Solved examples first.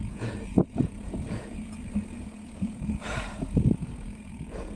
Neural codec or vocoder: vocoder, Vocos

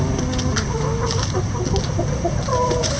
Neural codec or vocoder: none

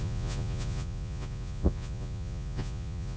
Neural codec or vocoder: vocoder, Vocos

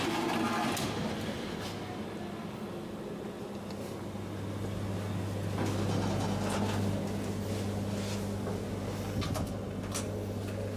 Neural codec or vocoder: none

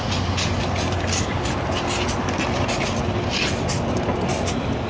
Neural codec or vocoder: none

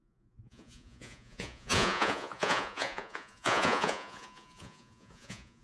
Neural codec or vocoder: vocoder, Vocos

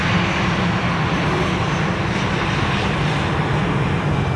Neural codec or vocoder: none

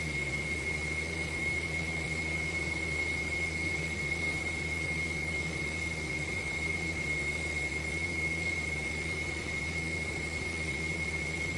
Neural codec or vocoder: vocoder, Vocos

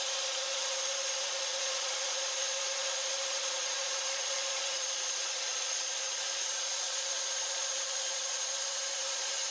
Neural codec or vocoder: vocoder, Vocos